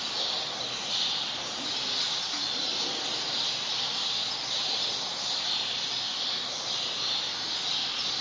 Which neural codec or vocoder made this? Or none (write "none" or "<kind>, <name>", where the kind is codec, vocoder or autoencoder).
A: none